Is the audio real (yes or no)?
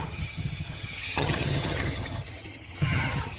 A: no